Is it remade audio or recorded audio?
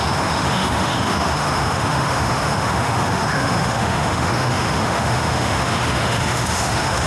remade